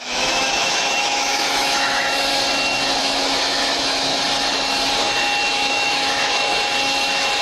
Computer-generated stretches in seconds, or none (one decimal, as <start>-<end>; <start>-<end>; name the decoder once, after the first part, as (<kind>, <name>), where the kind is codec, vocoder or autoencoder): 0.0-2.3 (autoencoder, DAC-VAE); 3.0-4.1; 5.5-6.5